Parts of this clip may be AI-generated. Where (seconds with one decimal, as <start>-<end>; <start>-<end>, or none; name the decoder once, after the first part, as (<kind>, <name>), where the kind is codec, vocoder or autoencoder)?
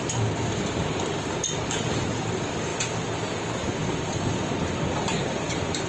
none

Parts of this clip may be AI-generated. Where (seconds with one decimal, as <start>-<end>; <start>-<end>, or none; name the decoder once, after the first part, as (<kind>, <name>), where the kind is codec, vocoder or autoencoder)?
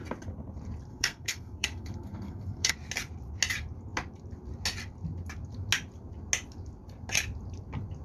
0.9-2.7 (codec, SNAC)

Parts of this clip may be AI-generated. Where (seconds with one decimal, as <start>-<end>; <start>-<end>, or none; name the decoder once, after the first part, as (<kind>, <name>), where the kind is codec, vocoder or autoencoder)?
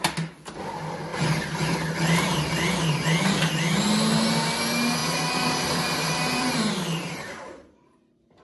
1.1-3.8 (vocoder, BigVGAN v2); 5.0-8.4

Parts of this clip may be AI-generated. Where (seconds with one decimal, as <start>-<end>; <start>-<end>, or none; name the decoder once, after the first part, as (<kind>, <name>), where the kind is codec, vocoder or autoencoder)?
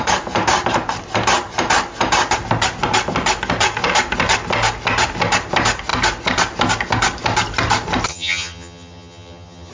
8.1-9.7 (vocoder, HiFi-GAN)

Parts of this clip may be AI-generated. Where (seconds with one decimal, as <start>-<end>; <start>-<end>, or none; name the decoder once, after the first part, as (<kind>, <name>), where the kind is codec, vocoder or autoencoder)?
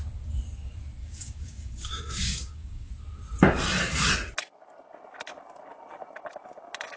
1.0-2.9 (codec, DAC)